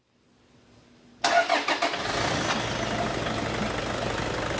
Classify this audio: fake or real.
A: real